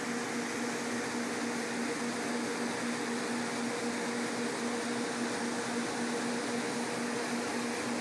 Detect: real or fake real